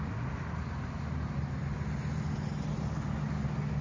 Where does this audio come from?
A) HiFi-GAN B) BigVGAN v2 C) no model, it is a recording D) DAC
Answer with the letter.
C